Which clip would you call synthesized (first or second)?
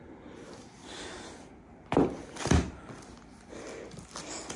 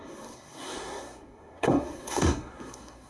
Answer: second